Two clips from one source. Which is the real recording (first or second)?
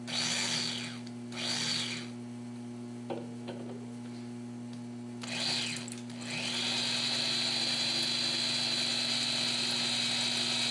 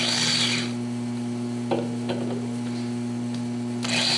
first